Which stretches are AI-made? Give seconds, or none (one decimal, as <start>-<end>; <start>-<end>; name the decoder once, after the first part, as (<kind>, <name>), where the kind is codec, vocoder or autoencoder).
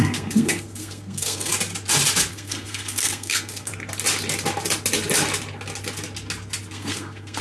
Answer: 0.0-1.5 (codec, SNAC); 2.3-3.7; 6.7-7.4